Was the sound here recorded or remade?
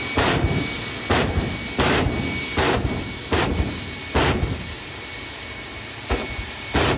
recorded